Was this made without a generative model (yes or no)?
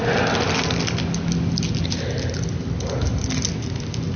yes